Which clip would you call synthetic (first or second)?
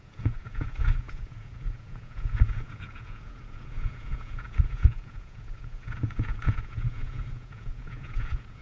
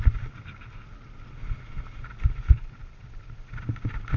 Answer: first